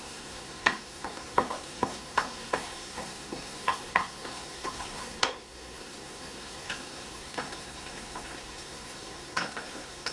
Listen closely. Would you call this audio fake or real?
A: fake